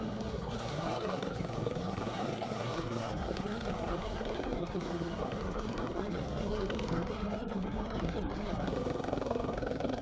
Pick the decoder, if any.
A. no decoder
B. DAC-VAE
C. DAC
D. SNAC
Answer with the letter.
D